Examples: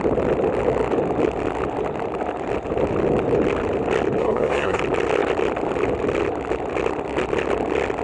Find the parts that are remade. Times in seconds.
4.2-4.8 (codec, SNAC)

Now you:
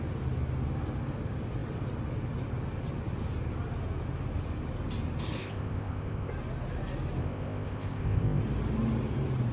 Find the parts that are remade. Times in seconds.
5.4-6.3 (codec, ZipCodec); 7.2-8.4

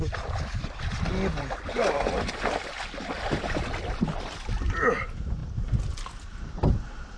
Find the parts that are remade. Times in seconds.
none

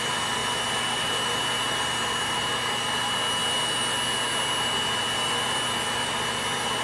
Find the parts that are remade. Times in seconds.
none

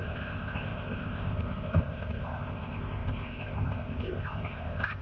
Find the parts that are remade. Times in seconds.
0.0-5.0 (codec, ZipCodec)

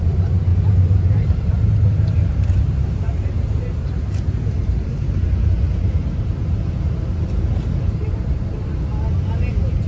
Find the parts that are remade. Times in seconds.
0.0-6.0 (vocoder, BigVGAN v2); 7.9-8.9; 9.5-9.9